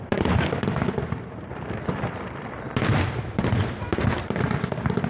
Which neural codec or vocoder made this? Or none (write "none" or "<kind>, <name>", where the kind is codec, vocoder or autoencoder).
vocoder, BigVGAN v2